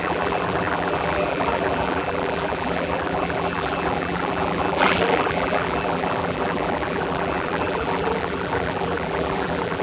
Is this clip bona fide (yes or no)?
no